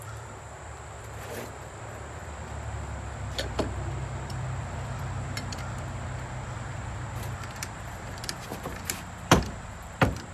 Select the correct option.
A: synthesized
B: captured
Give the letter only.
A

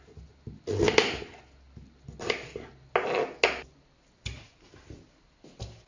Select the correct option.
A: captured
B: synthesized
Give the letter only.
A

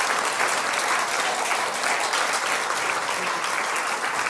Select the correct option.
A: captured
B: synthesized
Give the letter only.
A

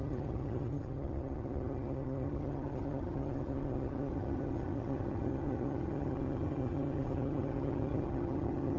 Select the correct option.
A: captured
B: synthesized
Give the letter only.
B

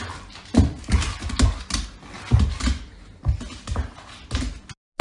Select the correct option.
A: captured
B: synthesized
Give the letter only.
A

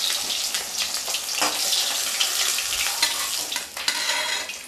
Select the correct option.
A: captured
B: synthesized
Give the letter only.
A